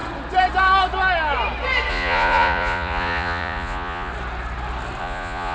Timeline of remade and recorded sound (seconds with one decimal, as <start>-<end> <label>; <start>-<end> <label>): 0.0-1.9 recorded; 1.9-4.1 remade; 4.1-5.0 recorded; 5.0-5.5 remade